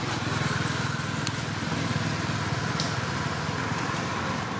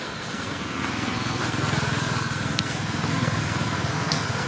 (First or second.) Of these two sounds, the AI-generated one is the second